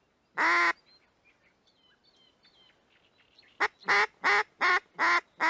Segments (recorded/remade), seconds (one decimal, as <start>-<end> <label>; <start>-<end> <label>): 0.0-5.5 recorded